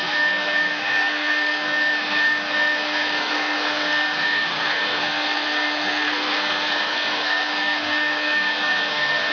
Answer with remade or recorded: remade